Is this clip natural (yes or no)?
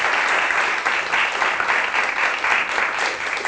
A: yes